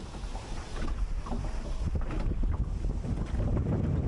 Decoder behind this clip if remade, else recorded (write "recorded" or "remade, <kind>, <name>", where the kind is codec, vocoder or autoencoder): recorded